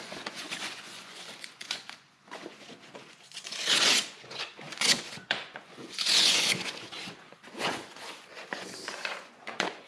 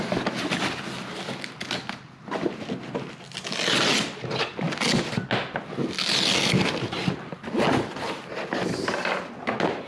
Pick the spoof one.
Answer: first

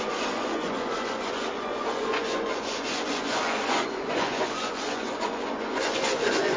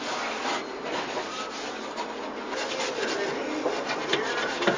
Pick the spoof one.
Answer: first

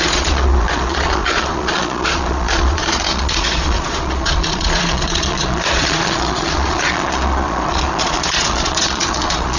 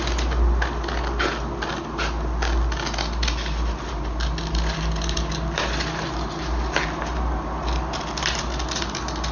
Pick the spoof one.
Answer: first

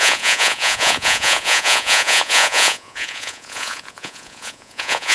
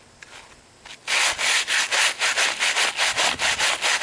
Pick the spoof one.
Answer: first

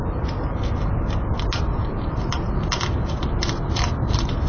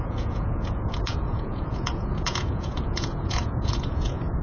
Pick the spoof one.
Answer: second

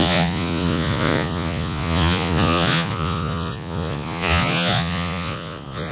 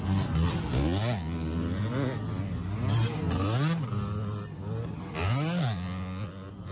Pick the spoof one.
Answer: first